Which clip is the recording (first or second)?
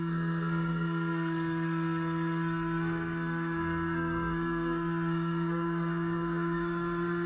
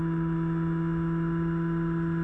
second